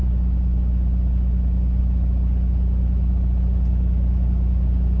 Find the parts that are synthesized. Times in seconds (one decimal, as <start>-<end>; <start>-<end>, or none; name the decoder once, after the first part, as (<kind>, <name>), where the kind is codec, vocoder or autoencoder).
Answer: none